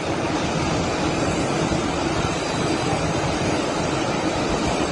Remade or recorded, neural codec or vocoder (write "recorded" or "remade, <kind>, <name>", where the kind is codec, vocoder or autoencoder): recorded